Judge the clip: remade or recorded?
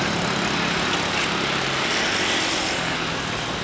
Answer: recorded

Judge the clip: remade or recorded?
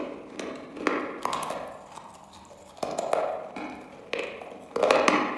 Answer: recorded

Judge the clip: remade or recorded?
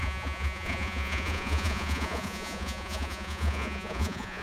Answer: remade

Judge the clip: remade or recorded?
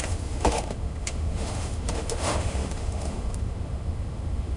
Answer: remade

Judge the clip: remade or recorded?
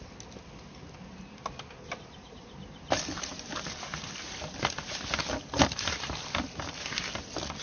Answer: recorded